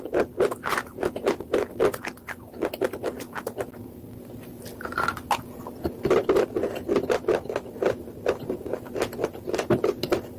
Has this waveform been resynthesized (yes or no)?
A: no